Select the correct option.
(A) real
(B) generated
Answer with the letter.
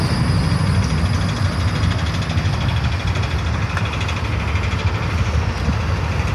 A